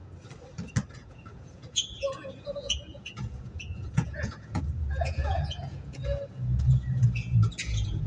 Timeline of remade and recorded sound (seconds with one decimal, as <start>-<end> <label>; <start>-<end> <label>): 0.0-0.9 recorded; 0.9-8.1 remade